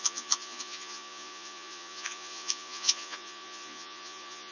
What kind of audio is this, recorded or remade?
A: remade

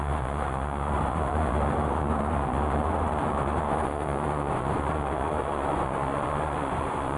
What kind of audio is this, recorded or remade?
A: remade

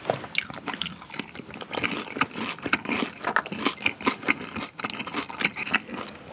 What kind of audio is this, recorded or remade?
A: recorded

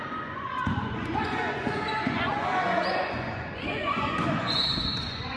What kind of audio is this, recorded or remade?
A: remade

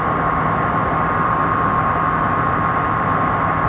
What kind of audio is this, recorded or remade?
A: recorded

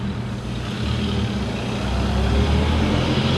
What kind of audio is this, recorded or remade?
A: recorded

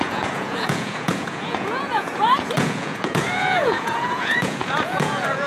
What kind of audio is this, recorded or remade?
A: remade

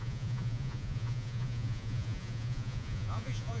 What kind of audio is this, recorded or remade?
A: remade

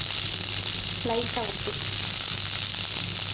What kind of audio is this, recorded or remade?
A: recorded